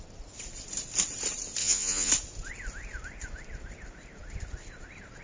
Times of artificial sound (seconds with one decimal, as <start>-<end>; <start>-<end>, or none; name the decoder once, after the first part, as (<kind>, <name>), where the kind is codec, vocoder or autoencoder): 1.6-2.1 (vocoder, Vocos)